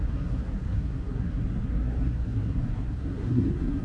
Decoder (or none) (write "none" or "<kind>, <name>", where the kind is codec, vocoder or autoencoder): codec, SNAC